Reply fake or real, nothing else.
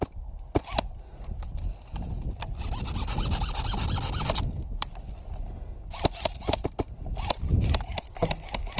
real